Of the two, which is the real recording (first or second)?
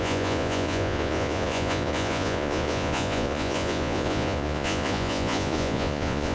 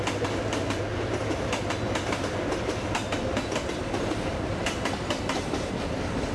second